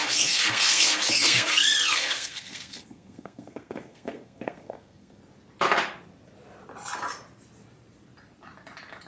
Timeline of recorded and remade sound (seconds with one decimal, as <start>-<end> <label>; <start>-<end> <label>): 0.0-5.2 remade; 5.2-9.1 recorded